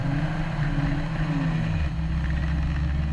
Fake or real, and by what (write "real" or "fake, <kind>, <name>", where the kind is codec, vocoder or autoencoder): real